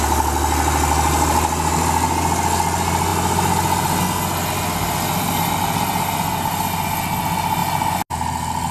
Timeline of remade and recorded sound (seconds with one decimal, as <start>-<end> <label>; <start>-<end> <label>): 0.0-8.7 recorded